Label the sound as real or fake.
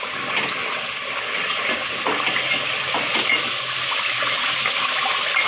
real